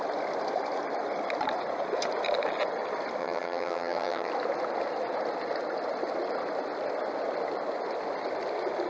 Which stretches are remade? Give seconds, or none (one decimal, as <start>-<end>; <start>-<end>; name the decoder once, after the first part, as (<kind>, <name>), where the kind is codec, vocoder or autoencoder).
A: 3.2-4.3 (vocoder, HiFi-GAN)

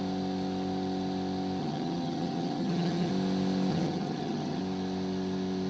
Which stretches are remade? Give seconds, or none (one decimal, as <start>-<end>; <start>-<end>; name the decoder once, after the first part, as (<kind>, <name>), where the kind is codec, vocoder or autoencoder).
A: 1.6-3.1 (vocoder, HiFi-GAN); 3.7-4.6

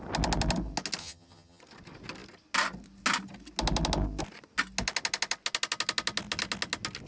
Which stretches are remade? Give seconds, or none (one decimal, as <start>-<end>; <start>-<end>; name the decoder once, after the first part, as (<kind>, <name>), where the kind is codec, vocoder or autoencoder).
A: 1.0-1.6 (vocoder, HiFi-GAN)

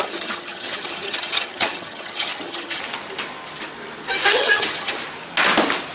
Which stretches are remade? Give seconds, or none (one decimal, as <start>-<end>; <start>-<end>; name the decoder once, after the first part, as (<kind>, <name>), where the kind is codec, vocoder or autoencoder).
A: 0.0-2.8 (vocoder, HiFi-GAN); 4.3-4.9

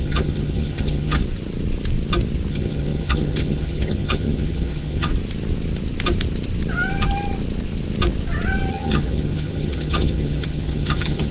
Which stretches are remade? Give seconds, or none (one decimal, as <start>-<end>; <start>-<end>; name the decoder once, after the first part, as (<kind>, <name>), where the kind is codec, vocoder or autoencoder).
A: 0.0-1.2 (vocoder, HiFi-GAN); 2.5-5.1; 8.7-11.3

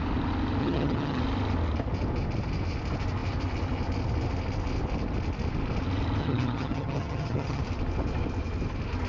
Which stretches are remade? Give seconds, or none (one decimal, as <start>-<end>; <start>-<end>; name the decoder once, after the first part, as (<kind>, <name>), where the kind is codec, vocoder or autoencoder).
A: 0.6-1.2 (vocoder, HiFi-GAN); 6.2-7.6

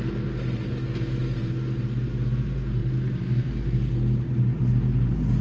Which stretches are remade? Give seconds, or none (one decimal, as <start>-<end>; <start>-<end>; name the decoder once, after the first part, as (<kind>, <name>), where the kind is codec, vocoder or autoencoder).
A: none